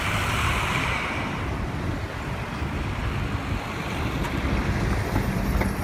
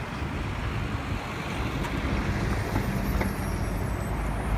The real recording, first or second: second